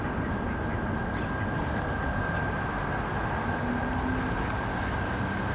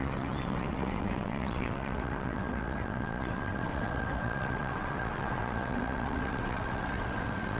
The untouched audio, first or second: first